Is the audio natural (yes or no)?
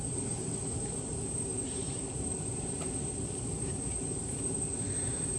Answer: no